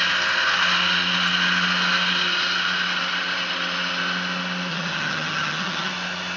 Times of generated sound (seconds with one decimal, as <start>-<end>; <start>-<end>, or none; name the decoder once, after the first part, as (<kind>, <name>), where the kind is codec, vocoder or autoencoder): 4.7-5.9 (vocoder, HiFi-GAN)